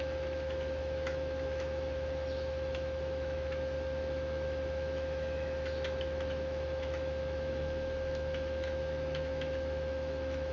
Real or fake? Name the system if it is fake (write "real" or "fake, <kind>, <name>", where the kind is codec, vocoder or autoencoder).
fake, autoencoder, DAC-VAE